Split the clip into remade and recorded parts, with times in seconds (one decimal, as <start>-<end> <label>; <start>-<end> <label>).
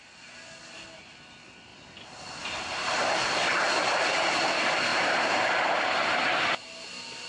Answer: 0.0-4.9 recorded; 4.9-5.7 remade; 5.7-7.3 recorded